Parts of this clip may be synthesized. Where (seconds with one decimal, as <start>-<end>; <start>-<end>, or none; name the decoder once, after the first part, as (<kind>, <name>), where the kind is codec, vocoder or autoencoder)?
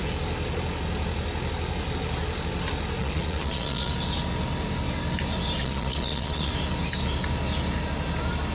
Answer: 3.0-3.9 (vocoder, Vocos); 5.6-6.5